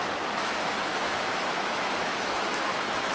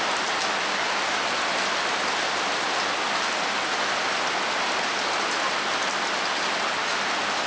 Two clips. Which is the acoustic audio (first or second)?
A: second